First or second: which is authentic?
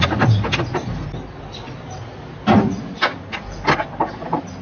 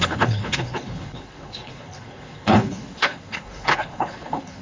first